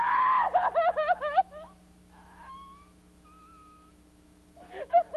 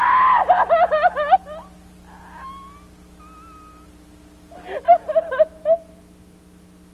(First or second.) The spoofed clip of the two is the first